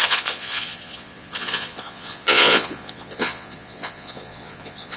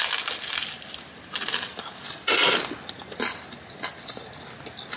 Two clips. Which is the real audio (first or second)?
second